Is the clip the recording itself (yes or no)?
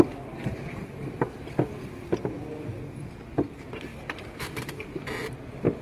yes